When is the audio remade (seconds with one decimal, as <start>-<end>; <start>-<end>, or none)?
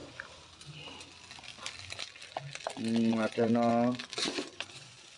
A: 3.1-3.7; 4.2-5.2